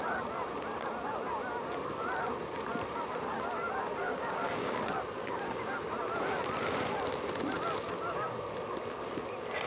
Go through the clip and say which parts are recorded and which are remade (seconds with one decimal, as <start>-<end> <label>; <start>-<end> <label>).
0.0-4.0 recorded; 4.0-4.7 remade; 4.7-5.2 recorded; 5.2-5.8 remade; 5.8-9.7 recorded